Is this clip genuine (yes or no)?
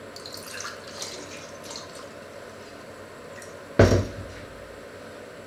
yes